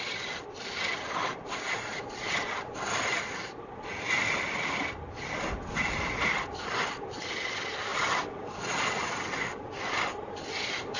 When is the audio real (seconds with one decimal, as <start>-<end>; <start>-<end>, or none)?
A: 0.0-11.0